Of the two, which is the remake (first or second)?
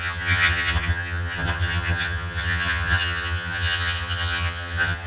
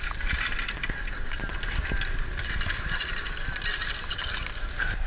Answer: first